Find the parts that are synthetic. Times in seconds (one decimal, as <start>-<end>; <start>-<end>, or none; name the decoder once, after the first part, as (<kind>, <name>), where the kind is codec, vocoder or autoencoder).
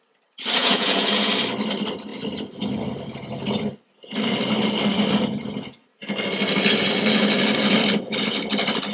0.6-1.3 (vocoder, Vocos)